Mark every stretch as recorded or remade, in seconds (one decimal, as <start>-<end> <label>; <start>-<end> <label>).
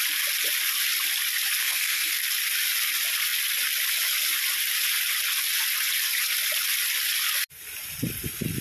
0.0-1.6 recorded; 1.6-2.2 remade; 2.2-8.6 recorded